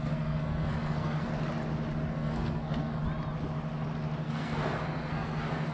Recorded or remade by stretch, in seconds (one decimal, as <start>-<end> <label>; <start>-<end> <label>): 0.0-1.3 remade; 1.3-2.1 recorded; 2.1-3.0 remade; 3.0-4.2 recorded; 4.2-5.7 remade